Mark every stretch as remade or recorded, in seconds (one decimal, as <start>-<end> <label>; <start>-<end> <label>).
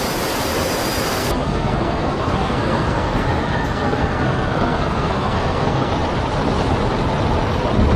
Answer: 0.0-1.1 recorded; 1.1-5.9 remade; 5.9-8.0 recorded